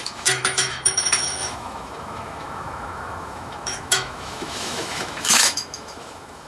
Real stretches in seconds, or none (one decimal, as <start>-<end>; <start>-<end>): none